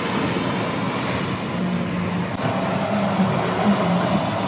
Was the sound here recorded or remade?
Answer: recorded